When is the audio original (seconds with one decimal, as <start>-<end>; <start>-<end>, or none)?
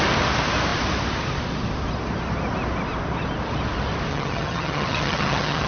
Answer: 0.0-4.1